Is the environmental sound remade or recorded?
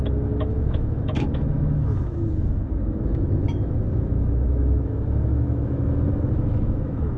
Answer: remade